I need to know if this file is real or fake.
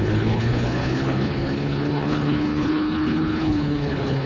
fake